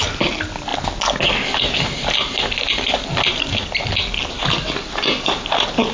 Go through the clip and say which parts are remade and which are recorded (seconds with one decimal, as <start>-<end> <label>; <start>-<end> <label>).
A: 0.0-5.9 recorded

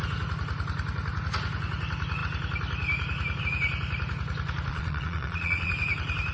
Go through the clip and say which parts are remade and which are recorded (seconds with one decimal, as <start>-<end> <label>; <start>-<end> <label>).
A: 0.0-4.7 recorded; 4.7-5.7 remade; 5.7-6.3 recorded

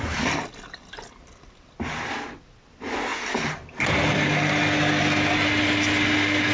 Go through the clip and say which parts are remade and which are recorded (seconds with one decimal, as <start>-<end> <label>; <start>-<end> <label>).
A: 0.0-6.5 recorded

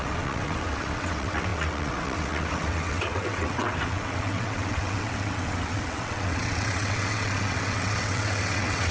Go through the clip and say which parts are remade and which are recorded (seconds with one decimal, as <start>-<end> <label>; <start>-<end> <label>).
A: 0.0-8.9 remade

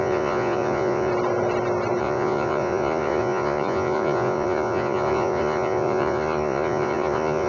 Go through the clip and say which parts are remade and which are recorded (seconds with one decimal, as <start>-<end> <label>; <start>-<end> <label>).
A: 0.0-1.1 remade; 1.1-2.0 recorded; 2.0-7.5 remade

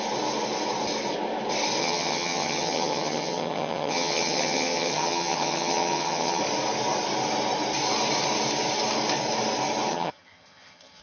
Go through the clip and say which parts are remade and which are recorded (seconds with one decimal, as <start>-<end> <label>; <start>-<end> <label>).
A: 0.0-1.8 recorded; 1.8-6.4 remade; 6.4-9.9 recorded; 9.9-11.0 remade

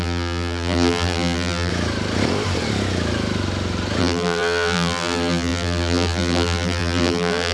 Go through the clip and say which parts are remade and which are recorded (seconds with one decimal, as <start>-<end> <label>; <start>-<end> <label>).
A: 0.0-1.7 remade; 1.7-4.0 recorded; 4.0-7.5 remade